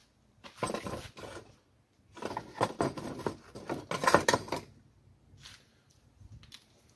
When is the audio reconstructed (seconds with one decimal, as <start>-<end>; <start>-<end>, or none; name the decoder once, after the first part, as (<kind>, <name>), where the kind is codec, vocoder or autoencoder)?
none

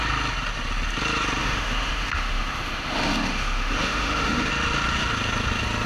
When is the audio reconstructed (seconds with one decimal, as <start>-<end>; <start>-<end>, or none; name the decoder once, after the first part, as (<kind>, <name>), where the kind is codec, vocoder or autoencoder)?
1.4-4.5 (autoencoder, DAC-VAE)

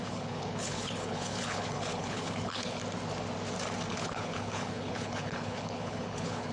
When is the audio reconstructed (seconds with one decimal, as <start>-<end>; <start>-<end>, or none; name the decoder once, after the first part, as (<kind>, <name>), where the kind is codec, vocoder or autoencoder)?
0.0-2.8 (codec, HILCodec); 3.9-6.5

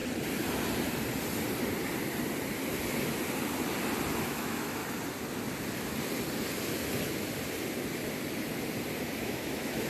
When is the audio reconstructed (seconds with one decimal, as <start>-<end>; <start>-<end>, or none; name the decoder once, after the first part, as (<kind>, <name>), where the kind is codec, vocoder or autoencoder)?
4.2-4.8 (autoencoder, DAC-VAE); 9.2-9.9

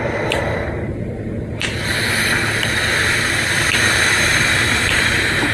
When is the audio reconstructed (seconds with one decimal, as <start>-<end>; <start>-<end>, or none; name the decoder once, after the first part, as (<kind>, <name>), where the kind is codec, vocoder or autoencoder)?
0.0-1.9 (vocoder, BigVGAN v2); 2.6-5.5

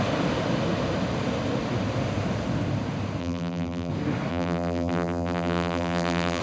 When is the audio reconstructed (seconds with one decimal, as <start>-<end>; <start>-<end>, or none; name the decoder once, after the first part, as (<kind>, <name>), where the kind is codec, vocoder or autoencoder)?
3.2-3.9 (vocoder, BigVGAN v2); 4.3-6.4